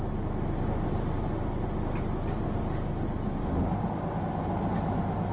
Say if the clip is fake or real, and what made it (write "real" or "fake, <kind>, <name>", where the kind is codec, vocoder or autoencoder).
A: real